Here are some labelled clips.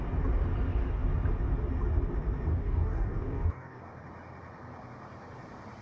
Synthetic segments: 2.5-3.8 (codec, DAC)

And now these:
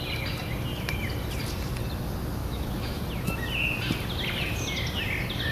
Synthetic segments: 2.4-3.0 (autoencoder, DAC-VAE)

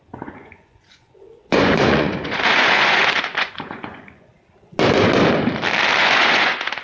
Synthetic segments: 0.0-4.3 (vocoder, Vocos); 6.0-6.8